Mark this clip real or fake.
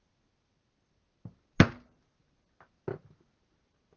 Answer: real